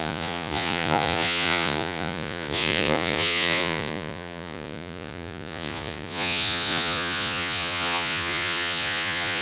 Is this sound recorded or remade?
remade